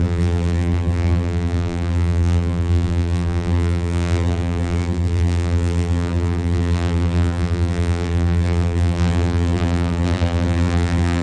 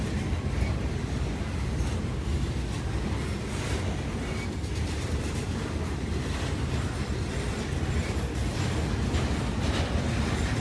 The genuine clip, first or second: second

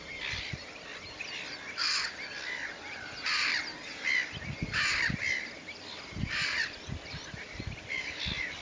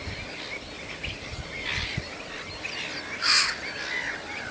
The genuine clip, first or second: second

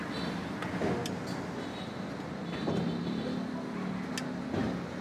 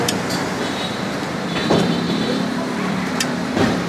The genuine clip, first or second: first